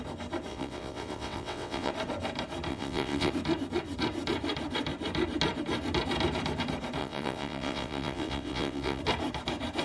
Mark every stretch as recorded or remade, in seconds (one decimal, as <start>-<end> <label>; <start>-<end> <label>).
0.0-0.5 recorded; 0.5-1.9 remade; 1.9-2.7 recorded; 2.7-3.3 remade; 3.3-7.0 recorded; 7.0-9.0 remade; 9.0-9.8 recorded